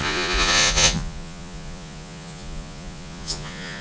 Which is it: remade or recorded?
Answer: remade